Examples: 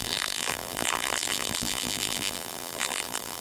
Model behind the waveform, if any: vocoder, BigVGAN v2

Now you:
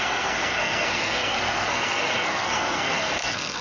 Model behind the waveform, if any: codec, SNAC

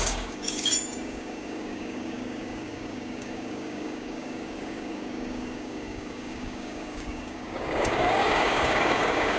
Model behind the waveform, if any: codec, DAC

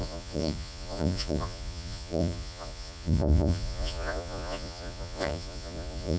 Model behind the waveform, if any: vocoder, Vocos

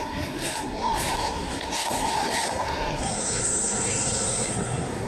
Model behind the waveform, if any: codec, SNAC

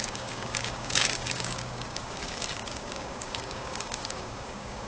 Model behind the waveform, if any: codec, DAC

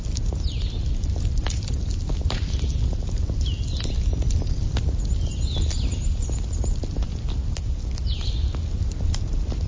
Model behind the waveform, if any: none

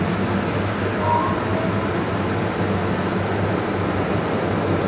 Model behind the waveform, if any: none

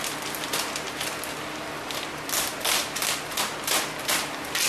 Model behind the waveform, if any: none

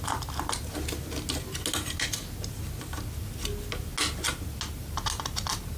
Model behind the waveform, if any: none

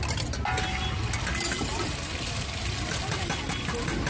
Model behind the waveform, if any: none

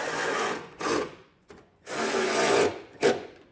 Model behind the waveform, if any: vocoder, Vocos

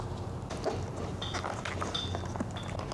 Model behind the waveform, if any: none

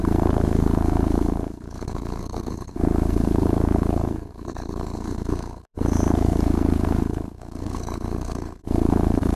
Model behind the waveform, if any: codec, SNAC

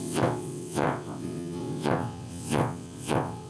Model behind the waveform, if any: vocoder, WaveNeXt